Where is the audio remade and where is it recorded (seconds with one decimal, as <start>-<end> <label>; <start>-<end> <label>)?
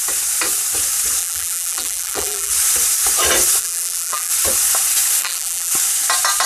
0.0-1.2 recorded; 1.2-2.5 remade; 2.5-3.6 recorded; 3.6-4.3 remade; 4.3-5.2 recorded; 5.2-5.7 remade; 5.7-6.5 recorded